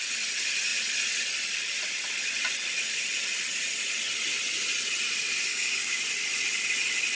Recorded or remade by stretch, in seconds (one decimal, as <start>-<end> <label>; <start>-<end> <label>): 0.0-5.5 recorded; 5.5-6.0 remade; 6.0-7.1 recorded